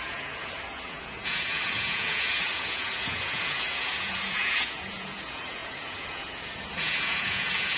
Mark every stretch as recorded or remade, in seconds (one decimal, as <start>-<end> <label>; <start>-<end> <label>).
0.0-7.8 remade